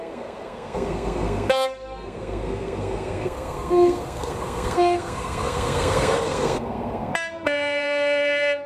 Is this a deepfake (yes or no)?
yes